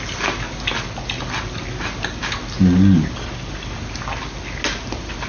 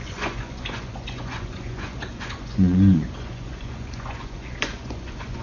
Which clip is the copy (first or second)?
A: second